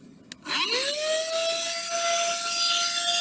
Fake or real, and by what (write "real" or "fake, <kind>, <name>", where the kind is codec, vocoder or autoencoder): real